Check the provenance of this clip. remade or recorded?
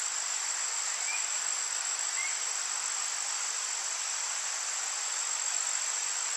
recorded